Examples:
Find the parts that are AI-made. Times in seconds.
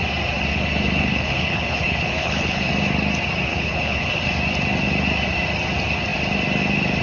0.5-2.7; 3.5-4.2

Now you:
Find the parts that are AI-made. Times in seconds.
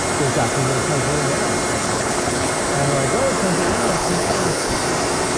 1.8-2.5; 3.6-4.7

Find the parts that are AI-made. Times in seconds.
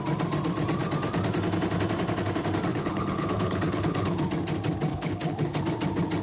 2.7-4.2; 4.9-5.6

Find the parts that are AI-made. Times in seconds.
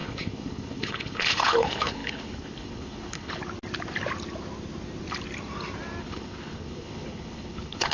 0.0-3.4; 6.0-7.9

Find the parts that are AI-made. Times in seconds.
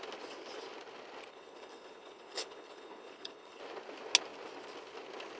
1.3-3.6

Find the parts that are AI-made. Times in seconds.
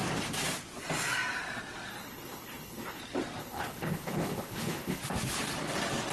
1.9-3.0; 3.4-5.0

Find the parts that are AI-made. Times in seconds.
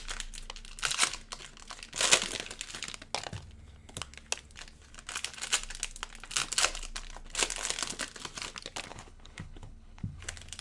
8.9-10.2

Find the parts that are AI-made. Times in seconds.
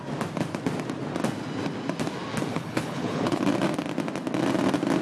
2.5-3.4